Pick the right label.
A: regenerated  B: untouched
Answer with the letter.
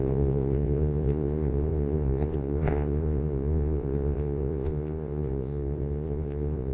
A